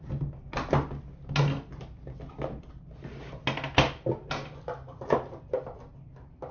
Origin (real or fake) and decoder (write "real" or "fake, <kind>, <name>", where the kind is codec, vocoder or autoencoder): real